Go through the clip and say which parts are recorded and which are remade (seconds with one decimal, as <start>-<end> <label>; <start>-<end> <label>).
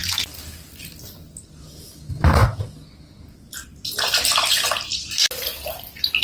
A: 0.0-6.2 recorded